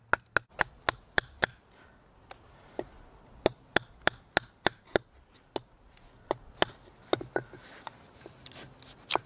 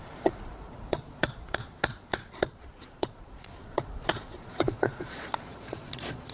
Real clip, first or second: first